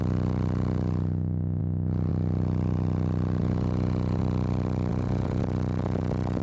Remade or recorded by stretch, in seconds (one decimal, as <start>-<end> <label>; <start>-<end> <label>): 0.0-3.4 recorded; 3.4-4.2 remade; 4.2-4.9 recorded; 4.9-5.4 remade; 5.4-6.4 recorded